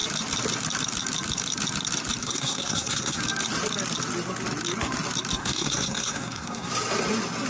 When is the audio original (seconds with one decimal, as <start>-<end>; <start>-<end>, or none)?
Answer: 0.0-2.2; 3.2-5.4; 6.7-7.5